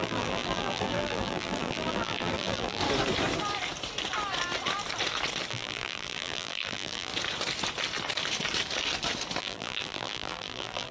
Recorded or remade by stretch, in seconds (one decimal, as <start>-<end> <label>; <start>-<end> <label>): 0.0-2.8 remade; 2.8-5.5 recorded; 5.5-7.1 remade; 7.1-9.4 recorded; 9.4-10.9 remade